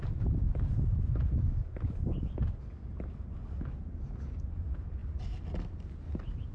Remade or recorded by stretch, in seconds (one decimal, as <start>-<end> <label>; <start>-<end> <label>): 0.0-6.5 recorded